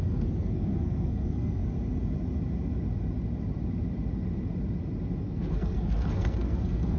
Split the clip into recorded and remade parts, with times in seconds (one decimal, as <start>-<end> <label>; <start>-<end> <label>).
0.0-1.6 remade; 1.6-5.2 recorded; 5.2-7.0 remade